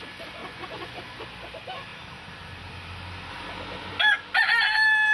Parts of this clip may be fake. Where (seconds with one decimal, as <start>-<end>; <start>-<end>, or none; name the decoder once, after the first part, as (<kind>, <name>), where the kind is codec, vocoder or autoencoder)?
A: 0.4-1.0 (vocoder, Vocos)